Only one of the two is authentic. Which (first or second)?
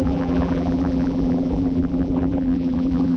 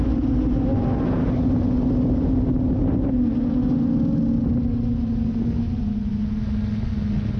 second